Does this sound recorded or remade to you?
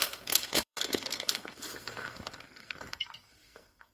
remade